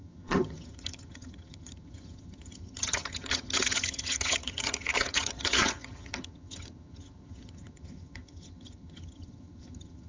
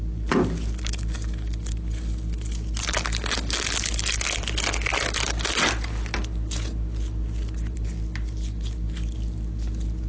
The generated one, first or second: first